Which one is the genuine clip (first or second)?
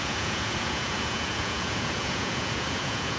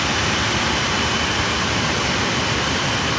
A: second